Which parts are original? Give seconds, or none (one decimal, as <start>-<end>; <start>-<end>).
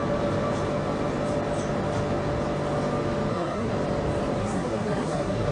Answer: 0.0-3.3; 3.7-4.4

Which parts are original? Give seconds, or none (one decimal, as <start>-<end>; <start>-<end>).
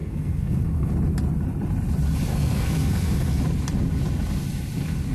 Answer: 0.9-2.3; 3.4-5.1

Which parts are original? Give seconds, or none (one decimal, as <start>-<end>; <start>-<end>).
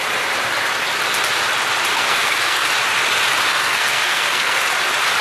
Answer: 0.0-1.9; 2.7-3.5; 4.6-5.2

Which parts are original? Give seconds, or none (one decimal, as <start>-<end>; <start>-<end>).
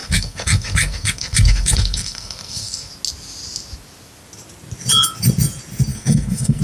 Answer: 2.9-5.9